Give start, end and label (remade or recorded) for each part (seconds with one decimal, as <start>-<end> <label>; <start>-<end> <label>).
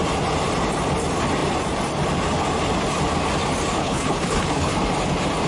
0.0-3.8 recorded; 3.8-4.7 remade; 4.7-5.5 recorded